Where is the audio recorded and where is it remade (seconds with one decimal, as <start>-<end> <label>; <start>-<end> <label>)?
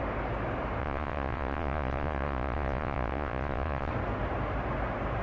0.0-0.8 recorded; 0.8-3.9 remade; 3.9-5.2 recorded